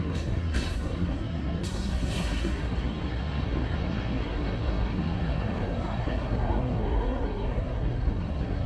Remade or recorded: remade